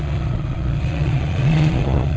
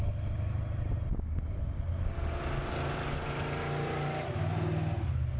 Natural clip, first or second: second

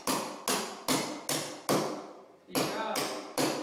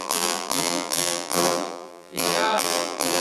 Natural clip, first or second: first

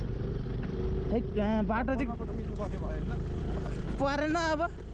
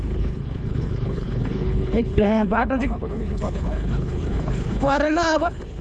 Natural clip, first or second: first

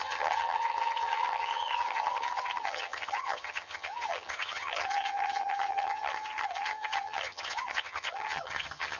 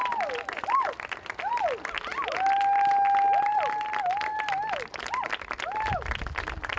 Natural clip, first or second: second